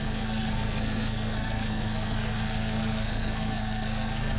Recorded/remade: remade